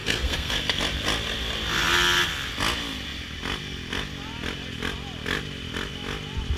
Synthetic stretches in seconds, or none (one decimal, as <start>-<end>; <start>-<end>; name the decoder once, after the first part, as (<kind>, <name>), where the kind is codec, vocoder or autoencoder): 0.0-0.8 (codec, SNAC)